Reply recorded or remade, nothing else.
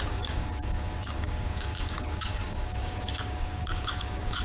remade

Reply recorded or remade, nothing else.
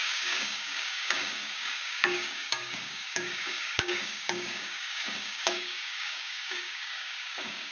remade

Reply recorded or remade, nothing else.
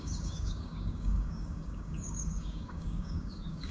remade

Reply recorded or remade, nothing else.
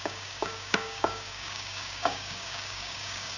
remade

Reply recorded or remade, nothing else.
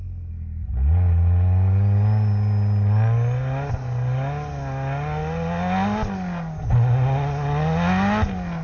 recorded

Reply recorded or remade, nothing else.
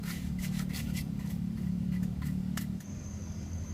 remade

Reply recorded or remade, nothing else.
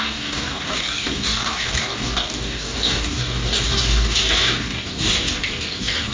remade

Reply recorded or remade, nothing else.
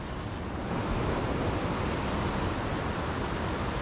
recorded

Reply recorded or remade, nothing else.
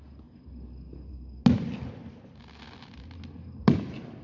recorded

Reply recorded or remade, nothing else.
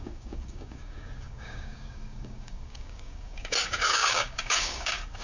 remade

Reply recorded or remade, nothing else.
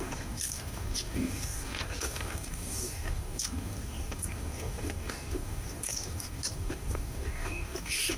remade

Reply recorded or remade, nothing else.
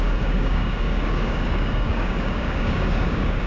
remade